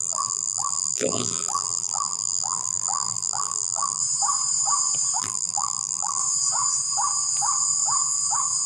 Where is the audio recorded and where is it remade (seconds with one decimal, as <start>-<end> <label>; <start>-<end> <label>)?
0.0-4.0 remade; 4.0-5.2 recorded; 5.2-6.2 remade; 6.2-8.7 recorded